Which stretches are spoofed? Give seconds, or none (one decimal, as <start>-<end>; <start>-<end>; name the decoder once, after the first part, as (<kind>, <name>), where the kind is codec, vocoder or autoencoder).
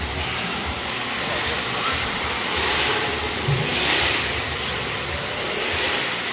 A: none